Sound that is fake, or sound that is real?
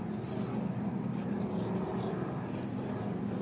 real